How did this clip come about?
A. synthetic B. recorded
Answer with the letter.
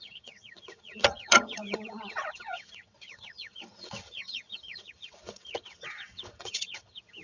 A